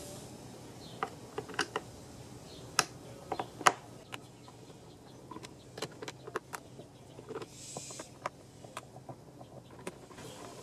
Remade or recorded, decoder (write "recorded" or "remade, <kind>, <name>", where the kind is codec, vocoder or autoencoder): recorded